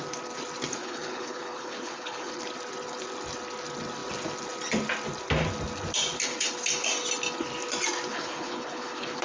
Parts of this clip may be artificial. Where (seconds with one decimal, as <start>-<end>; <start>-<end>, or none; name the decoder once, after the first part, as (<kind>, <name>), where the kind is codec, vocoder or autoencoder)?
0.8-2.3 (codec, HILCodec); 8.1-9.2